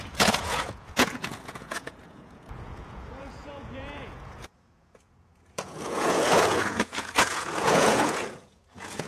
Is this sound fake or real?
fake